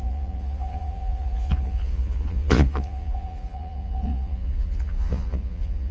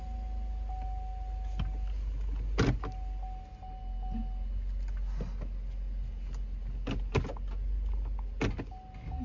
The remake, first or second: first